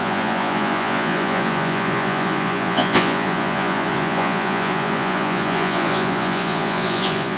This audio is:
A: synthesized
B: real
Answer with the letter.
A